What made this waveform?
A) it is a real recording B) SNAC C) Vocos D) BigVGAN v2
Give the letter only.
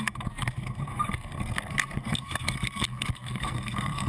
B